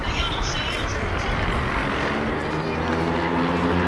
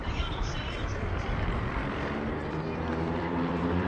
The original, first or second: first